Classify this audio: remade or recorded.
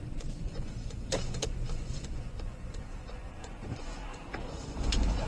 remade